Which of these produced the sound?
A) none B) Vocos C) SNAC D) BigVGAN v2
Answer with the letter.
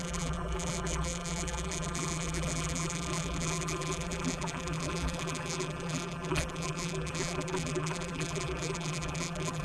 D